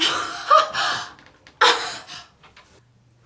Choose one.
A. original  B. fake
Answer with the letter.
A